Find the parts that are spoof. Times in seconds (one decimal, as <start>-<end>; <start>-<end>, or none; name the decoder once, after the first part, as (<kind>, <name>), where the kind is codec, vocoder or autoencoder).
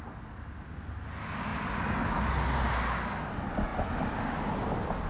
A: none